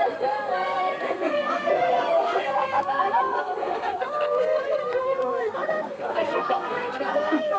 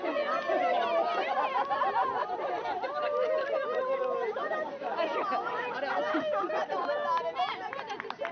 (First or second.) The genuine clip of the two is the second